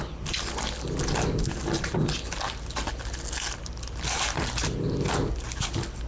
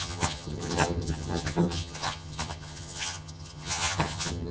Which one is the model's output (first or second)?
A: second